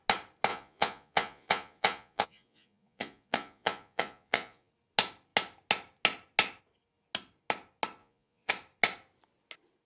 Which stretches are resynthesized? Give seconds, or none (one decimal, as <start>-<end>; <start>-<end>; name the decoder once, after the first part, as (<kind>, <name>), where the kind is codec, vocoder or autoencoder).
0.5-4.7 (vocoder, Vocos); 8.0-8.5